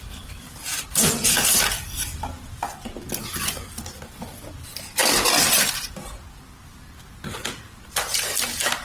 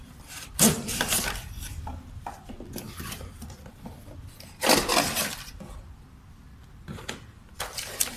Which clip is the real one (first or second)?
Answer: first